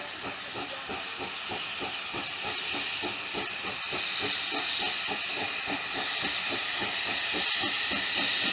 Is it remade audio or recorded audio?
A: recorded